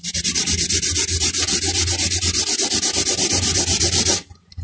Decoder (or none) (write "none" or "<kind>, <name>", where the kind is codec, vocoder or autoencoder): none